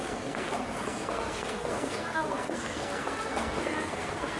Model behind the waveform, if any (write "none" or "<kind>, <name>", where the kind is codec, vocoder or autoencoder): codec, SNAC